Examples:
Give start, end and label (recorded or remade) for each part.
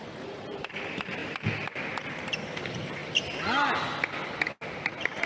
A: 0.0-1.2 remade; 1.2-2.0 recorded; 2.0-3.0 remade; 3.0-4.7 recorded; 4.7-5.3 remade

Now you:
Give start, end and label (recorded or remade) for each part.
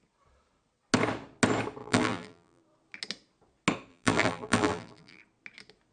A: 0.0-1.8 recorded; 1.8-2.6 remade; 2.6-3.9 recorded; 3.9-5.2 remade; 5.2-5.9 recorded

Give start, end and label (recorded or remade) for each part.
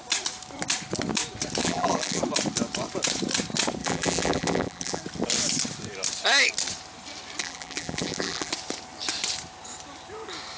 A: 0.0-1.6 recorded; 1.6-2.2 remade; 2.2-3.8 recorded; 3.8-5.0 remade; 5.0-7.4 recorded; 7.4-8.5 remade; 8.5-10.6 recorded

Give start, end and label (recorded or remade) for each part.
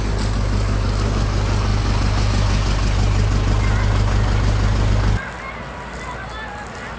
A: 0.0-7.0 recorded